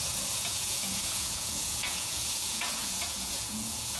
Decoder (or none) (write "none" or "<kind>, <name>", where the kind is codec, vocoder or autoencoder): vocoder, Vocos